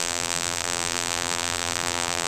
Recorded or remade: remade